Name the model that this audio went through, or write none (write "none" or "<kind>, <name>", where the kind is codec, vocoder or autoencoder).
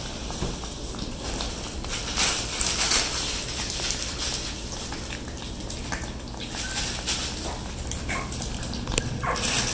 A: none